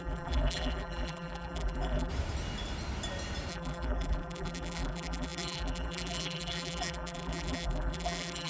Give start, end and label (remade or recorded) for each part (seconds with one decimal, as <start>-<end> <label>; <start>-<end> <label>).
0.0-2.1 remade; 2.1-3.5 recorded; 3.5-8.5 remade